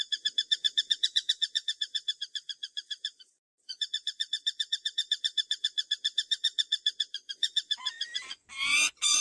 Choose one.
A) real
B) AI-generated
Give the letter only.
B